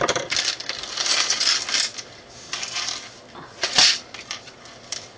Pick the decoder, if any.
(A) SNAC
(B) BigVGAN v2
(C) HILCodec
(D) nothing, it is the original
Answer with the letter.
D